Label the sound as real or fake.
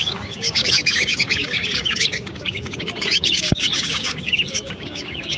fake